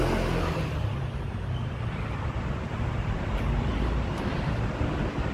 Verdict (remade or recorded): recorded